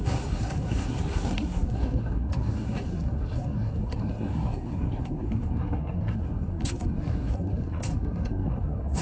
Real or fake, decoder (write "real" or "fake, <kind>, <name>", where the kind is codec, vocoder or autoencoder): fake, codec, SNAC